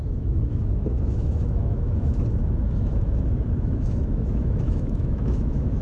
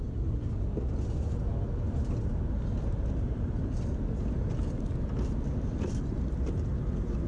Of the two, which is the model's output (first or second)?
first